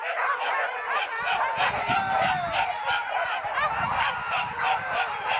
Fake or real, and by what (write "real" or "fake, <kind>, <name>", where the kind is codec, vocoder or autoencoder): real